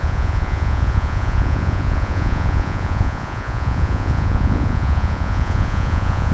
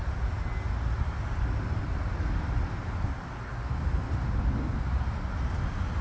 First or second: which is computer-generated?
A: first